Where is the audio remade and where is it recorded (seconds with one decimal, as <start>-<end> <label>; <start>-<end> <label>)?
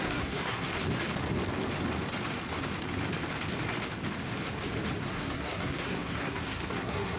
0.0-0.7 remade; 0.7-5.0 recorded; 5.0-7.2 remade